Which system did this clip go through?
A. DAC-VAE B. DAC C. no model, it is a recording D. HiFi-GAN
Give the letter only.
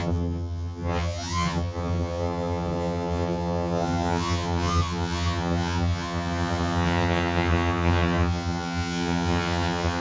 D